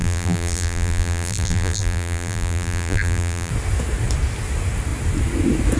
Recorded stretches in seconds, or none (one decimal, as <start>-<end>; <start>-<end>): 3.5-5.8